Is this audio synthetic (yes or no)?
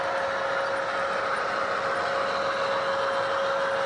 no